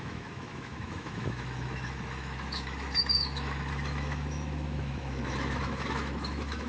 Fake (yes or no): yes